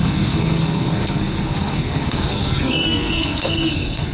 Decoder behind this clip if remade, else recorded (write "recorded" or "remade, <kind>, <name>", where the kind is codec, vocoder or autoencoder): remade, codec, SNAC